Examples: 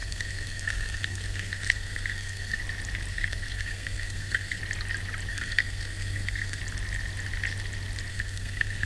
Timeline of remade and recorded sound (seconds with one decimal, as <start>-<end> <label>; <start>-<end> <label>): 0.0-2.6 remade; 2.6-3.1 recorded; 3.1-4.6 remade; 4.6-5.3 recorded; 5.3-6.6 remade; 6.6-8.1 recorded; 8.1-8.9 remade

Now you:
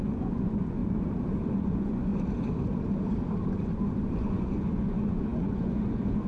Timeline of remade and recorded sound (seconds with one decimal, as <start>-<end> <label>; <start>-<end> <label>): 0.0-0.8 remade; 0.8-1.5 recorded; 1.5-2.1 remade; 2.1-4.2 recorded; 4.2-6.3 remade

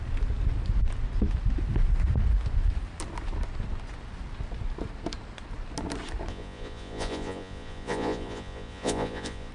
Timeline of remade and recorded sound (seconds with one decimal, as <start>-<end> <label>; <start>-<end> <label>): 0.0-6.3 recorded; 6.3-9.5 remade

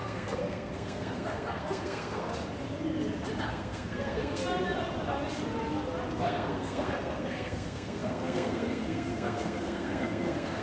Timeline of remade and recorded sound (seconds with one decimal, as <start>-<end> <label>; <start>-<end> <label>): 0.0-2.3 remade; 2.3-3.4 recorded; 3.4-4.4 remade; 4.4-6.2 recorded; 6.2-10.6 remade

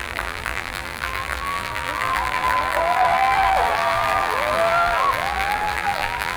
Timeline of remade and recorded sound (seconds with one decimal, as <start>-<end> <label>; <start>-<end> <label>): 0.0-6.4 remade